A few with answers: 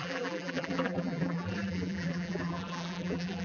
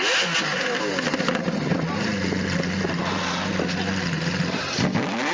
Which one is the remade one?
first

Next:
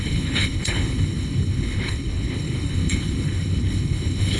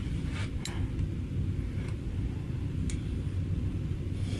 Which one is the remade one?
first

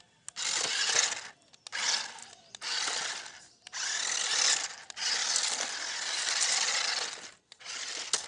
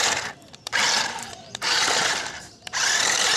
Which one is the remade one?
second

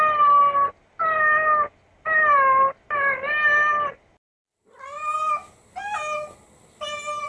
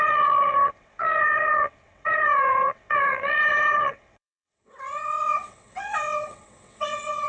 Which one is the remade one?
second